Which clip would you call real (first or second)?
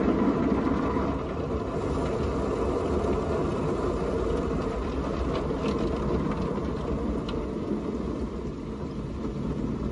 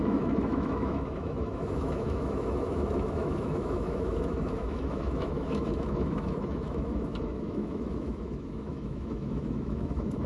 first